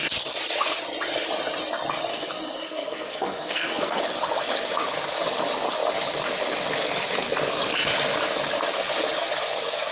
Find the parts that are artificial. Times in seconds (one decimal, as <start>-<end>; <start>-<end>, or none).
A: 2.1-4.0